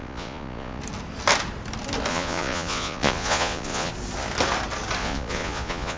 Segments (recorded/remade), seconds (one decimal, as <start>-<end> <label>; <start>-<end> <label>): 0.0-0.8 remade; 0.8-2.1 recorded; 2.1-3.9 remade; 3.9-5.0 recorded; 5.0-6.0 remade